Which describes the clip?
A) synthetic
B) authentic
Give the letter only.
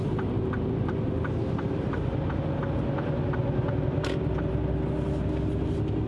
B